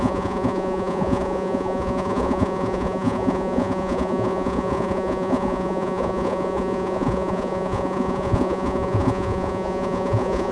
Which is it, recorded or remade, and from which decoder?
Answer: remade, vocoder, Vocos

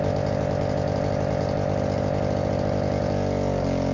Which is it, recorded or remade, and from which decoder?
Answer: recorded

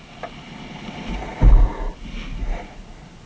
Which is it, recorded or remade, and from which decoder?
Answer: recorded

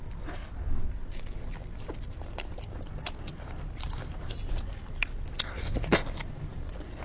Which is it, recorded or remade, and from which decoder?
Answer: recorded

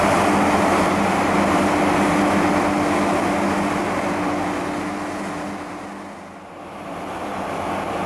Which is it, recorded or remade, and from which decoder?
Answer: recorded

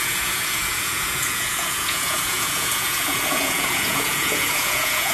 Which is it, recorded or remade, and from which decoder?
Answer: remade, vocoder, Vocos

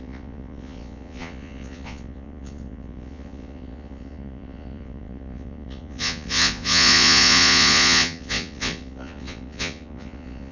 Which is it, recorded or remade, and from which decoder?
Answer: remade, vocoder, Vocos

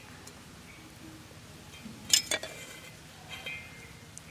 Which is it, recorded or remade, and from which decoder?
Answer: recorded